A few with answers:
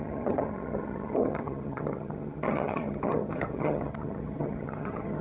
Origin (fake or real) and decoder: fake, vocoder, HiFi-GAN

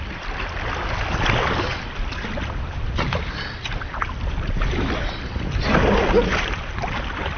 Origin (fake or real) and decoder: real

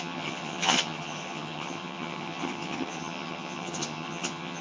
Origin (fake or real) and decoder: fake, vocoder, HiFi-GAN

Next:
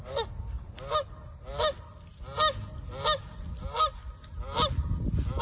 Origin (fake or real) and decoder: real